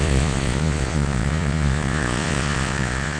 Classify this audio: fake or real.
fake